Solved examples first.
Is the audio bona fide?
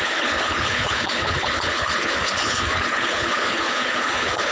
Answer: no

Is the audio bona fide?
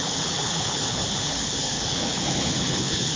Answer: no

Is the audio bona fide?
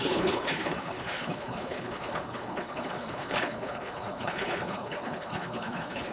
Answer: no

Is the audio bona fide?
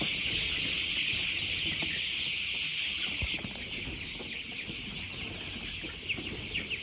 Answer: yes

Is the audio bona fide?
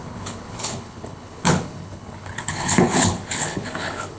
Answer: no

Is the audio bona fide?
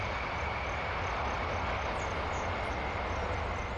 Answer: yes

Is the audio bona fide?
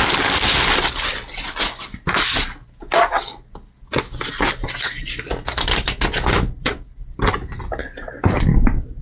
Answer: yes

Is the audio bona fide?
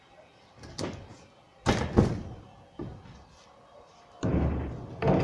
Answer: yes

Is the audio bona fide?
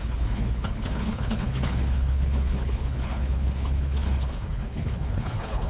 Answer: no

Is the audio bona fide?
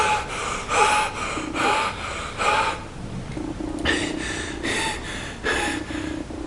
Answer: yes